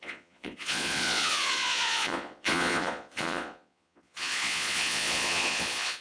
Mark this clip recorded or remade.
remade